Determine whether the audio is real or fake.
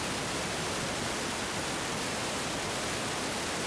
real